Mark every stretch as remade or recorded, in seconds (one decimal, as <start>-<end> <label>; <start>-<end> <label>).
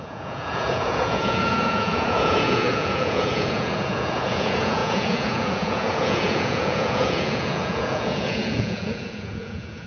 0.0-9.9 remade